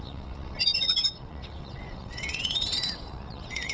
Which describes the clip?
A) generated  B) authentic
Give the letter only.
A